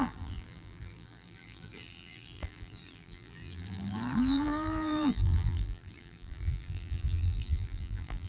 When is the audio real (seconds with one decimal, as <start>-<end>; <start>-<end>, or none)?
none